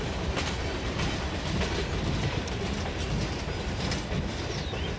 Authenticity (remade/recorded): recorded